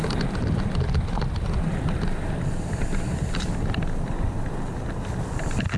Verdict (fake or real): real